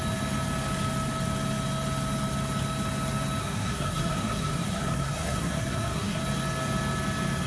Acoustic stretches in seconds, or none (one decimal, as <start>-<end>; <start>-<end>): 0.0-3.4; 6.2-7.5